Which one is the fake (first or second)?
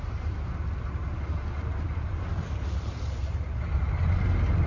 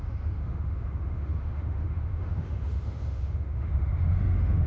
second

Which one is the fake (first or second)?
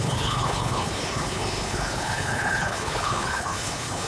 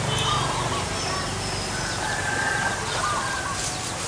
first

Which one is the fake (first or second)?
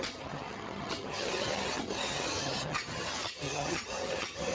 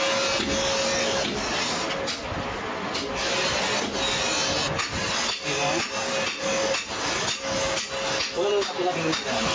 first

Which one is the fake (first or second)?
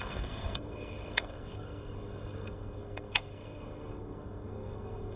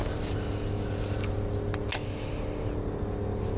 first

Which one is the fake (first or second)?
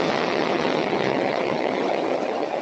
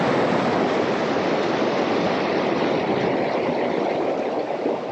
first